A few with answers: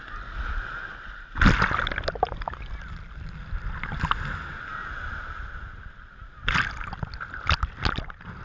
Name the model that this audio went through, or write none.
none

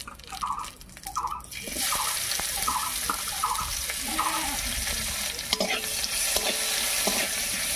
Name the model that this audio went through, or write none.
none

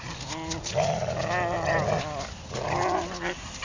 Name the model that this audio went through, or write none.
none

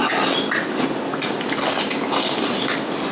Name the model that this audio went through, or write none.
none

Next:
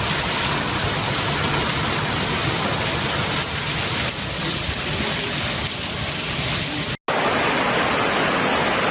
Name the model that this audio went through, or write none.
none